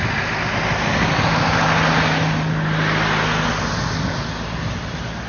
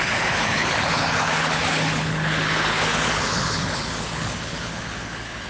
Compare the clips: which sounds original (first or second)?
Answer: first